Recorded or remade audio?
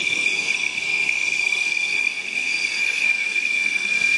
remade